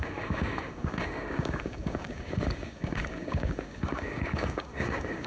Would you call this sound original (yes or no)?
no